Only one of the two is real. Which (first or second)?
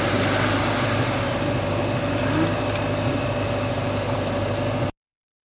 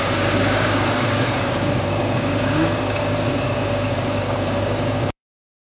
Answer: first